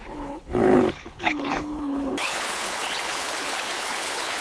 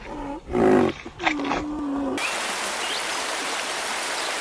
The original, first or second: second